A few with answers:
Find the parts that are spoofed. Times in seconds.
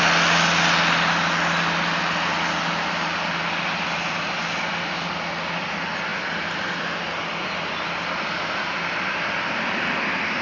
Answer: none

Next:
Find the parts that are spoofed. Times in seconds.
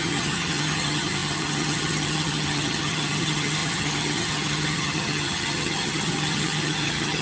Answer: 0.0-7.2 (vocoder, HiFi-GAN)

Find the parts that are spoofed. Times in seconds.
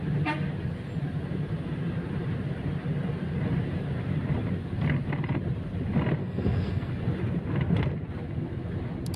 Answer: 6.2-6.9 (codec, SNAC)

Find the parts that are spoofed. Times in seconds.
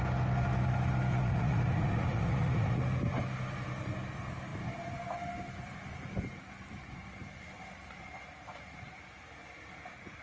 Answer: 1.1-2.8 (vocoder, Vocos)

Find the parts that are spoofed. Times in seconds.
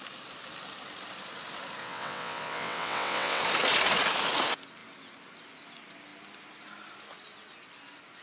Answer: 1.8-3.4 (vocoder, WaveNeXt)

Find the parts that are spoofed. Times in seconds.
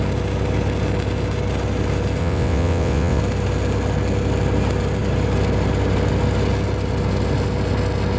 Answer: 2.2-3.2 (vocoder, WaveNeXt)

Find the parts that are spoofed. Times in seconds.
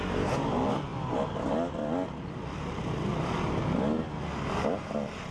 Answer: none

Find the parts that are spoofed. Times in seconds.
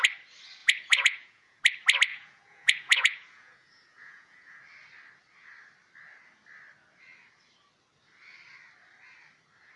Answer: 0.6-1.6 (vocoder, Vocos); 2.1-4.6